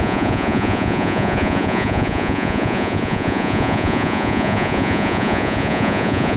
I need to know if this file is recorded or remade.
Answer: remade